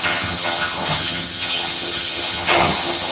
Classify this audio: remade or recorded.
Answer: remade